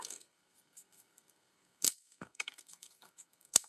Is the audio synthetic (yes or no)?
yes